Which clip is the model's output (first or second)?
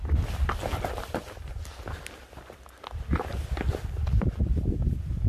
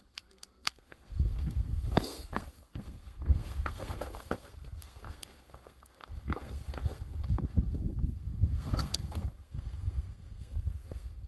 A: second